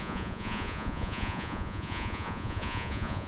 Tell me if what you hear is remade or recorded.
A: remade